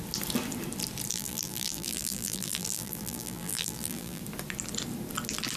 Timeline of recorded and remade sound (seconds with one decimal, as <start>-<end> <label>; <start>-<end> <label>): 0.0-1.1 recorded; 1.1-4.2 remade; 4.2-5.6 recorded